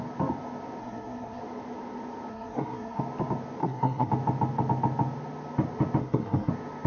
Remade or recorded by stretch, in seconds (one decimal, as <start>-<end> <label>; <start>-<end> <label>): 0.0-0.8 recorded; 0.8-1.4 remade; 1.4-2.3 recorded; 2.3-3.0 remade; 3.0-3.6 recorded; 3.6-4.1 remade; 4.1-6.0 recorded; 6.0-6.5 remade; 6.5-6.9 recorded